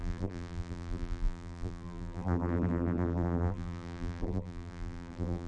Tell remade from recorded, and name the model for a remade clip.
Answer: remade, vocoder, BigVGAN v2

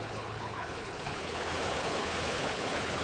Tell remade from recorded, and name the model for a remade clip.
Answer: remade, codec, HILCodec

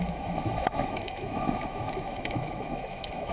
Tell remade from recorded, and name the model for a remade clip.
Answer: remade, autoencoder, DAC-VAE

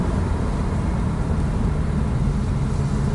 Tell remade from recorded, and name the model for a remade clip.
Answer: recorded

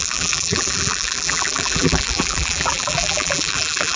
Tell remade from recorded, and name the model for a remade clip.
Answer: remade, vocoder, BigVGAN v2